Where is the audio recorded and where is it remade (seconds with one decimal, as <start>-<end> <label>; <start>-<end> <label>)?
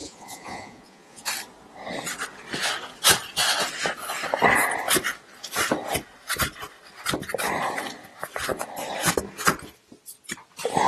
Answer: 0.0-1.2 remade; 1.2-10.9 recorded